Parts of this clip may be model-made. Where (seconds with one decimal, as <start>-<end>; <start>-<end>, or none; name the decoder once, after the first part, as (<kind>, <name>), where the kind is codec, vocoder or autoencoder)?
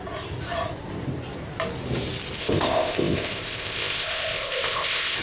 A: 2.4-5.2 (codec, ZipCodec)